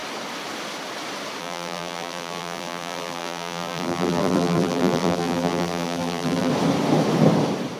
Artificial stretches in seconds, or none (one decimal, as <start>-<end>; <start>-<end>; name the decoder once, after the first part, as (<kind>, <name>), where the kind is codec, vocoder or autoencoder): 1.4-6.5 (vocoder, BigVGAN v2)